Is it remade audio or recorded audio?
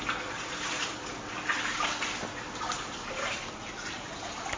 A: recorded